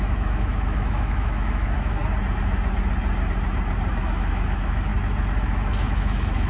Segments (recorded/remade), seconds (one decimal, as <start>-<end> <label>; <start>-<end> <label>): 0.0-2.0 remade; 2.0-3.9 recorded; 3.9-4.9 remade; 4.9-5.4 recorded; 5.4-6.5 remade